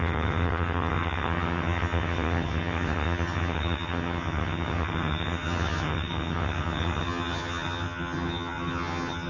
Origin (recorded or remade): remade